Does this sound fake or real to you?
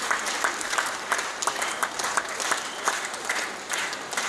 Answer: fake